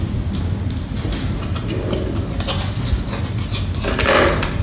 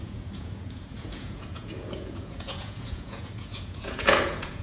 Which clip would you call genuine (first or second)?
first